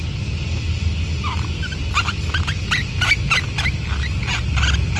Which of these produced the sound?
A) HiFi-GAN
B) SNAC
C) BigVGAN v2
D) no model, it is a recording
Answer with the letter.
D